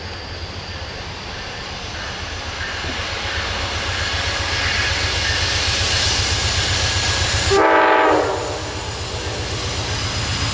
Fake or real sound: real